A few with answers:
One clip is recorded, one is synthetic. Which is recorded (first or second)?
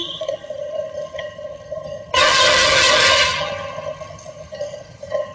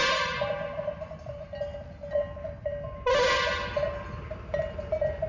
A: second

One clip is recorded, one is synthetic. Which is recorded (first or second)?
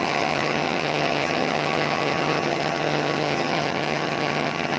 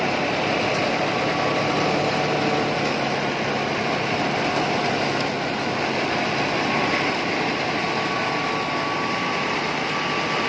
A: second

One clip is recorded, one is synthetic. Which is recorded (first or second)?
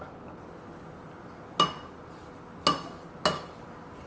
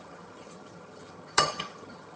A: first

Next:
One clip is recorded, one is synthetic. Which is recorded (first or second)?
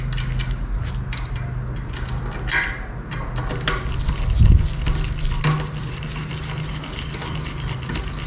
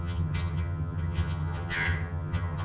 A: first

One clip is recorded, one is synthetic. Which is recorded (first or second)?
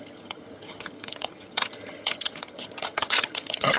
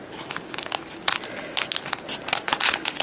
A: second